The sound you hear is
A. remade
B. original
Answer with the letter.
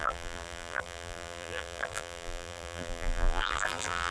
A